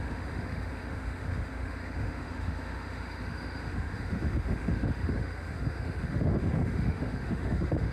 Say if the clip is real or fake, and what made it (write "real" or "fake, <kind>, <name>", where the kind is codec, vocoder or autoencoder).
fake, autoencoder, DAC-VAE